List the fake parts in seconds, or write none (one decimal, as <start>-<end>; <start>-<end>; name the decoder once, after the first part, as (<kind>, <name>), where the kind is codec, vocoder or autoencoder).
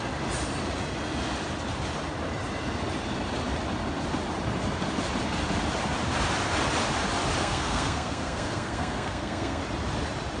7.4-9.6 (codec, SNAC)